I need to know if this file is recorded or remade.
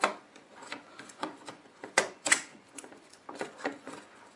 remade